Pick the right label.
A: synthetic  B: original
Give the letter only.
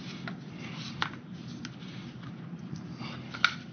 B